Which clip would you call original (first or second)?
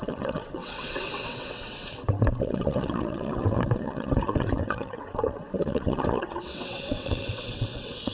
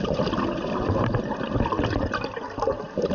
second